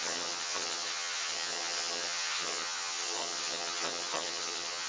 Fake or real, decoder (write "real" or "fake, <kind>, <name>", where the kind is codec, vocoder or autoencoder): fake, vocoder, HiFi-GAN